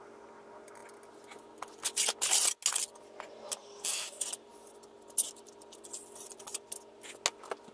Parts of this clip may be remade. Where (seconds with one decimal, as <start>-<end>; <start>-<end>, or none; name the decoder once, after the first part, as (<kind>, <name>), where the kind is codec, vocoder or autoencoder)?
none